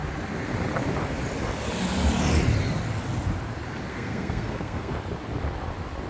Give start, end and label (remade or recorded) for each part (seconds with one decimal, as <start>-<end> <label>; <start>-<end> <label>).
0.0-3.9 recorded; 3.9-4.9 remade; 4.9-6.1 recorded